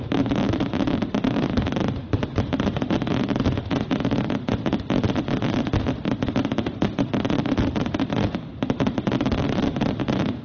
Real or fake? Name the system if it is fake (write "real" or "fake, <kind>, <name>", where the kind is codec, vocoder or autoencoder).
fake, vocoder, BigVGAN v2